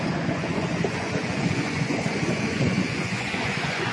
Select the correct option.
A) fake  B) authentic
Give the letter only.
A